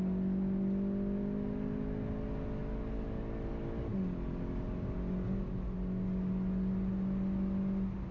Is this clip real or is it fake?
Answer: real